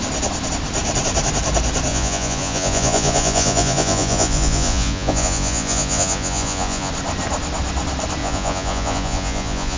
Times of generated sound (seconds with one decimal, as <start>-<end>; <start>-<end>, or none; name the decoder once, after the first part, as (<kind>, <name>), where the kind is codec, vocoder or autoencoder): 1.9-6.9 (vocoder, Vocos); 8.2-9.8